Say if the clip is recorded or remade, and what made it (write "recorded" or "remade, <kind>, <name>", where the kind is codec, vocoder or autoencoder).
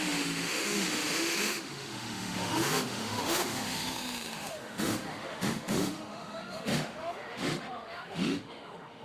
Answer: remade, autoencoder, DAC-VAE